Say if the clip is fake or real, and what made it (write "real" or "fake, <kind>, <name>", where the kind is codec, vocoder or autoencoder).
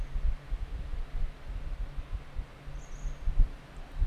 real